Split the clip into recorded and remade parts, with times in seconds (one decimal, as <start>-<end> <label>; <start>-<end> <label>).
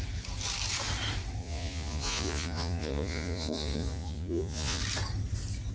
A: 0.0-1.4 recorded; 1.4-4.8 remade; 4.8-5.7 recorded